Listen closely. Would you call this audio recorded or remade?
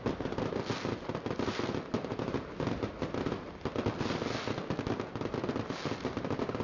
recorded